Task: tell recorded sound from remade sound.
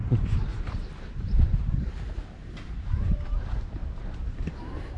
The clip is remade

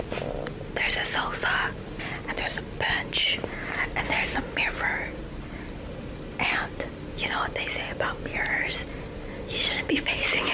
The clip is recorded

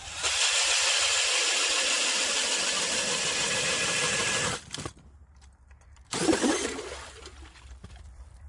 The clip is remade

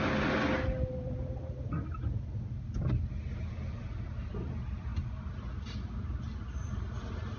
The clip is recorded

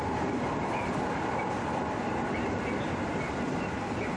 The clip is recorded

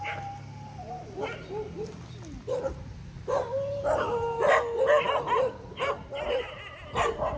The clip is recorded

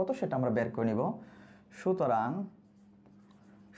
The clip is recorded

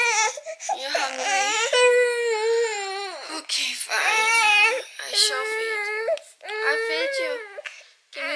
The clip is recorded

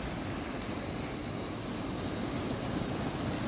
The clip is recorded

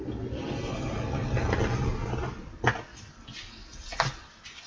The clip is recorded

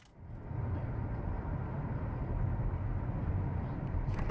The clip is recorded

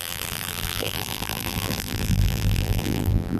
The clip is remade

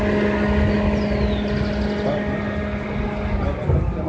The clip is recorded